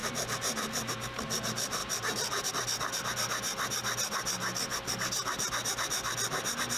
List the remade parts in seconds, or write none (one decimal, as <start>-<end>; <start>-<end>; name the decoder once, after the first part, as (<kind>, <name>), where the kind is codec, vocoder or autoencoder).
0.0-1.3 (vocoder, BigVGAN v2); 1.8-2.5